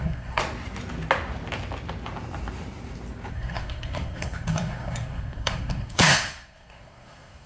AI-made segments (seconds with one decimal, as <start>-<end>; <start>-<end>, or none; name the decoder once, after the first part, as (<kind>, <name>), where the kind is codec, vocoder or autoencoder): 0.0-0.4 (codec, SNAC); 3.3-7.5